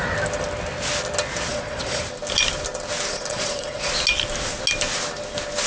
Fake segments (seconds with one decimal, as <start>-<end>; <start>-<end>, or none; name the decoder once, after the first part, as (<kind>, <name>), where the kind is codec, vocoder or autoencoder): 1.5-2.0 (vocoder, Vocos); 3.1-3.9